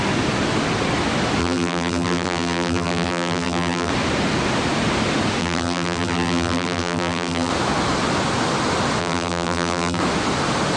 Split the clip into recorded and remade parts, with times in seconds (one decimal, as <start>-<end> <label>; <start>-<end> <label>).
0.0-1.4 recorded; 1.4-3.9 remade; 3.9-5.4 recorded; 5.4-7.5 remade; 7.5-9.0 recorded; 9.0-10.0 remade; 10.0-10.8 recorded